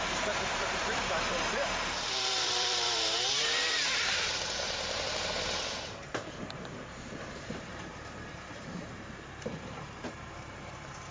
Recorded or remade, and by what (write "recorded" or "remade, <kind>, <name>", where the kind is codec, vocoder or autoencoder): remade, vocoder, BigVGAN v2